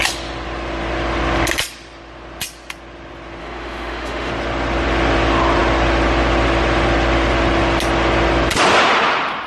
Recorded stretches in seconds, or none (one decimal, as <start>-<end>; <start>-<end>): 0.0-3.4; 4.3-9.5